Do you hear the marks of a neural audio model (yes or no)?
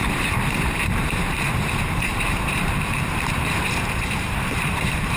yes